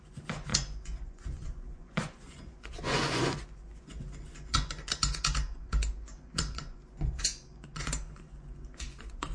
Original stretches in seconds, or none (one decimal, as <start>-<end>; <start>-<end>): none